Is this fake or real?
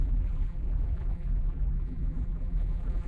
fake